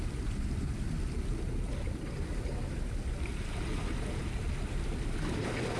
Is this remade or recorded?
recorded